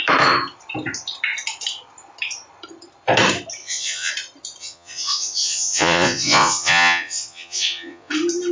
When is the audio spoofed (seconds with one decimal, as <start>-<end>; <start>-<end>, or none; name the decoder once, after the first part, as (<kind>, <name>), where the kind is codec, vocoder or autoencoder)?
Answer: 3.6-4.1 (vocoder, Vocos); 4.6-8.1